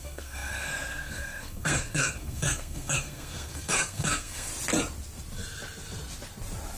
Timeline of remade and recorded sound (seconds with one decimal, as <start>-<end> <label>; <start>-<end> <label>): 0.0-4.5 remade; 4.5-6.8 recorded